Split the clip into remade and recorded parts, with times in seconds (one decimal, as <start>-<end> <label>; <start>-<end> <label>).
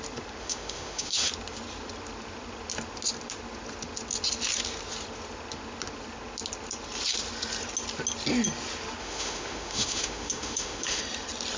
0.0-0.4 recorded; 0.4-1.3 remade; 1.3-9.0 recorded; 9.0-11.0 remade; 11.0-11.6 recorded